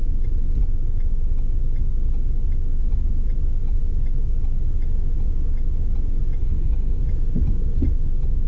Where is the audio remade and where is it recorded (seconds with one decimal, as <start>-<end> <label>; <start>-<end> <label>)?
0.0-6.4 recorded; 6.4-7.0 remade; 7.0-8.5 recorded